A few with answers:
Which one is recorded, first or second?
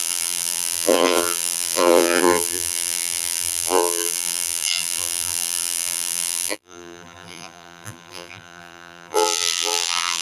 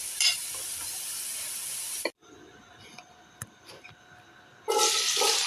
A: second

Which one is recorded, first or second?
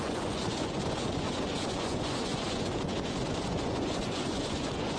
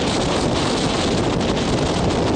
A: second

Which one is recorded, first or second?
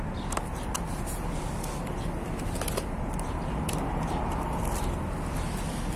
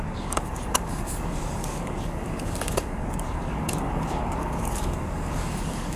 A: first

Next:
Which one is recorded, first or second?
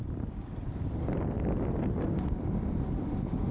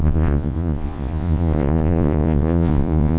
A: first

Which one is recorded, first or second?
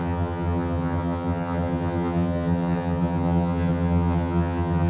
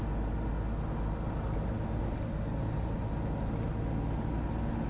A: second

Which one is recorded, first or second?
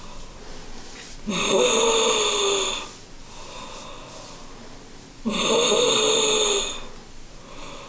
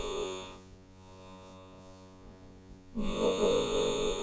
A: first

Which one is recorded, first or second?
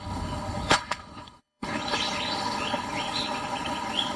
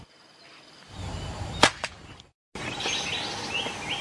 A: second